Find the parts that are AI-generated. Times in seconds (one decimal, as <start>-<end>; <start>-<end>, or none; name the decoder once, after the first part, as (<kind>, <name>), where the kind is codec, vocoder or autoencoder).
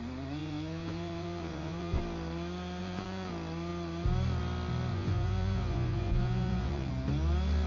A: 0.4-2.0 (vocoder, Vocos); 2.8-3.3; 4.9-6.9